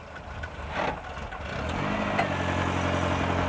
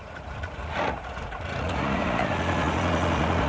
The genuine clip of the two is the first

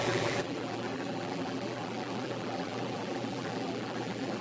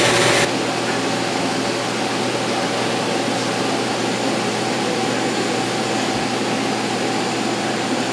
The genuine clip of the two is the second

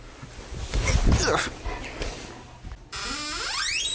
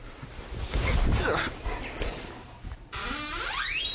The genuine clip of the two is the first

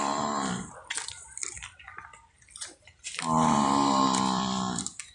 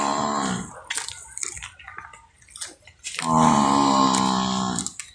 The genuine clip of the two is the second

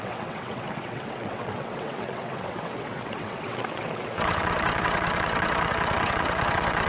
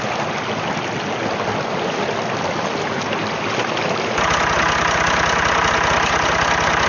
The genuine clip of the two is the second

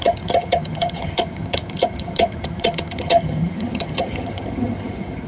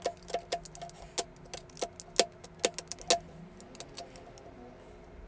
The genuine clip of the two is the second